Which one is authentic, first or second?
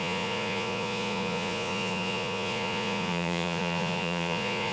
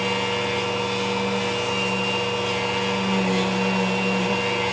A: second